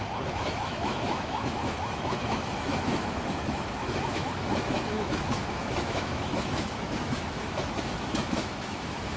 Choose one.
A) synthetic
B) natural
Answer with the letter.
A